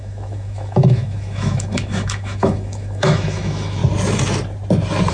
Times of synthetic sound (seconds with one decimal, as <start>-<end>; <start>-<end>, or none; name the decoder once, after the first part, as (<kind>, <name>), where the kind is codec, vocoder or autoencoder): 0.0-3.8 (autoencoder, DAC-VAE)